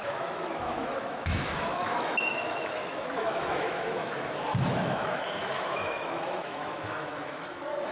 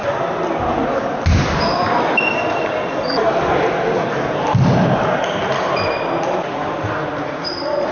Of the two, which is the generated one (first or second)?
first